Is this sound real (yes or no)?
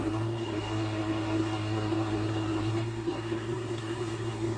no